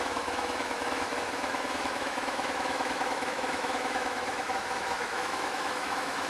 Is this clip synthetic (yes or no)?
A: yes